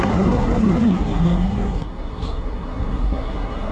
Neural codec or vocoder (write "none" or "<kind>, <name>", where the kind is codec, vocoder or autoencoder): codec, SNAC